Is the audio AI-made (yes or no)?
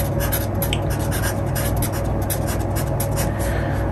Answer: no